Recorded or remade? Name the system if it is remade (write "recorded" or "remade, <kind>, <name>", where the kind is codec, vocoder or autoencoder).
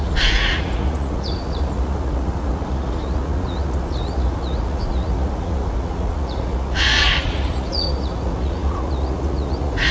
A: remade, vocoder, Vocos